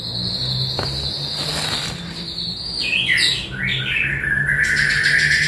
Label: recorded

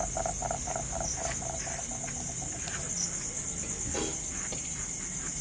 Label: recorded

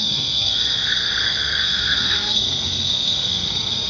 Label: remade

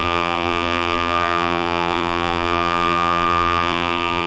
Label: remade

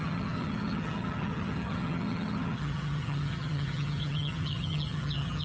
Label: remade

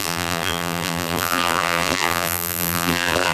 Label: remade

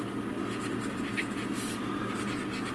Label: recorded